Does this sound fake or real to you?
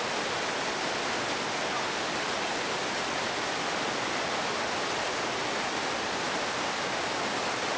real